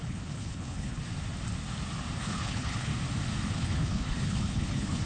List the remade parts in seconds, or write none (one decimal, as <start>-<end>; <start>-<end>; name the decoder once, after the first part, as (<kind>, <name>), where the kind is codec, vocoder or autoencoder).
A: 0.0-1.0 (codec, HILCodec); 2.2-2.9; 3.5-5.1